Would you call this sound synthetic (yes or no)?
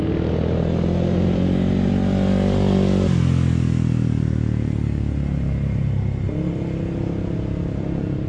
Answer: no